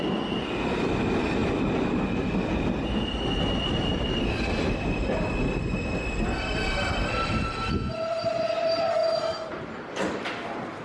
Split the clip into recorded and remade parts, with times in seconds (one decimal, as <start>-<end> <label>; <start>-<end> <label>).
0.0-10.8 recorded